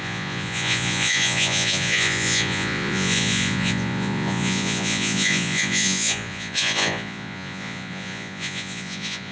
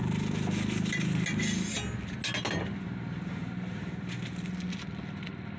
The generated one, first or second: first